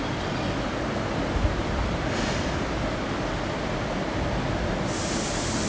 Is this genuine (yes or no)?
yes